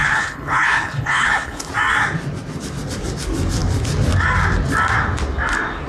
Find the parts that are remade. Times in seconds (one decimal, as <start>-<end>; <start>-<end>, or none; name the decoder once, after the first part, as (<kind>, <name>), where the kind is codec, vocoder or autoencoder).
0.0-1.7 (codec, HILCodec)